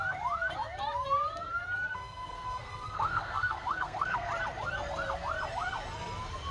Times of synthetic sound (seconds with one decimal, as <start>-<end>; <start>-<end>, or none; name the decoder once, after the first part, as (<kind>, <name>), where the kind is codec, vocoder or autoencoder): 1.9-4.3 (codec, SNAC)